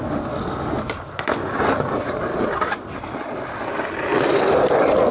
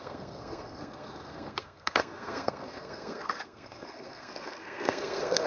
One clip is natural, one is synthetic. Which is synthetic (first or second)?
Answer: second